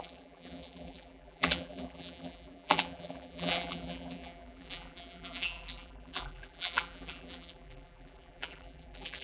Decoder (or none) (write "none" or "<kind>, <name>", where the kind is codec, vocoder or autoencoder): vocoder, BigVGAN v2